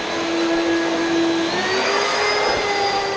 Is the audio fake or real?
real